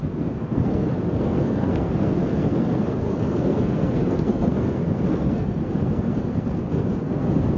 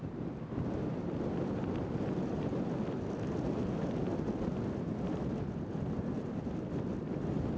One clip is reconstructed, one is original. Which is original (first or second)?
second